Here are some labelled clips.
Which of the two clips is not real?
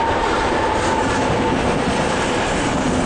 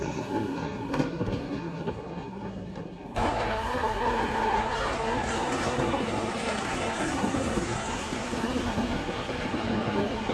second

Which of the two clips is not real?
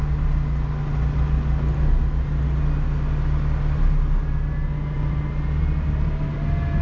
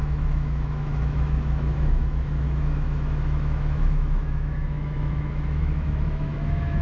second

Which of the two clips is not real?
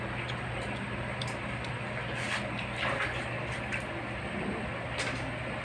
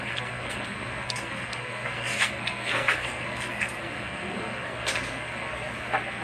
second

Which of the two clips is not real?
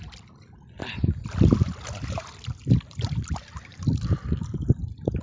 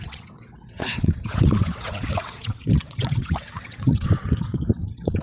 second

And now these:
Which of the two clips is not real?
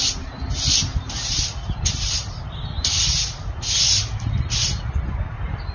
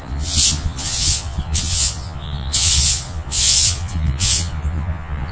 second